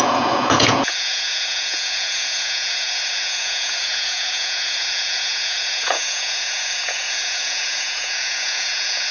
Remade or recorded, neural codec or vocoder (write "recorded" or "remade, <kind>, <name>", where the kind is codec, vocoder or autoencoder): remade, vocoder, Vocos